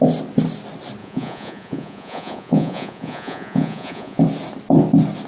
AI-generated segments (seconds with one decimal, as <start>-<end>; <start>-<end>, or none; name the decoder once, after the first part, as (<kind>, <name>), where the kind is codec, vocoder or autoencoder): 1.0-4.2 (vocoder, Vocos)